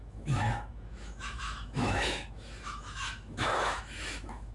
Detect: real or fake fake